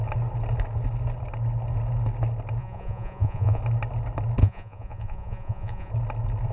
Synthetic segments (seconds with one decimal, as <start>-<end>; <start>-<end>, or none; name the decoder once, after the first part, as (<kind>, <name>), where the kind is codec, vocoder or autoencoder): 2.6-3.6 (vocoder, Vocos); 4.4-5.9